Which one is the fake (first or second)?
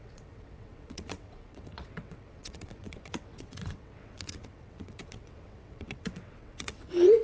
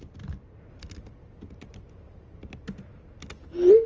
first